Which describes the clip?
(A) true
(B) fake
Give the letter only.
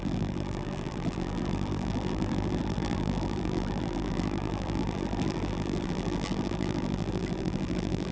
B